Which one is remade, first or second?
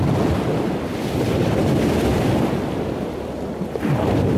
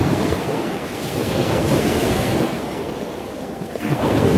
second